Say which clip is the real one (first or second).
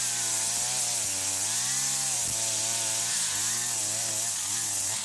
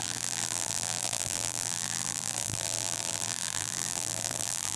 first